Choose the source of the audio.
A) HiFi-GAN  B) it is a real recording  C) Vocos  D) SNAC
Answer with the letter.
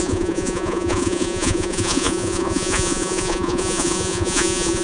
C